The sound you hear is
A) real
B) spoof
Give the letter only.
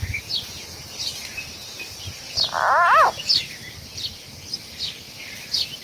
A